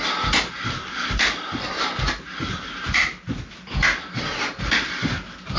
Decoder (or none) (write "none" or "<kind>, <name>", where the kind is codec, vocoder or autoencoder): none